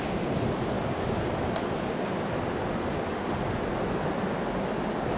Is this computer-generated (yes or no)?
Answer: no